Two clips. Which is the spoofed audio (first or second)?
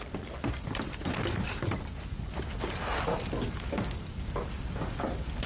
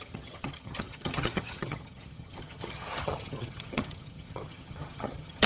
second